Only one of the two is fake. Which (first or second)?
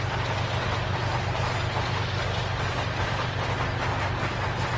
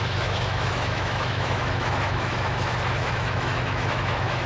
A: second